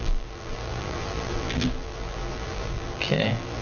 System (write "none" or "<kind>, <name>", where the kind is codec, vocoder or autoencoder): vocoder, BigVGAN v2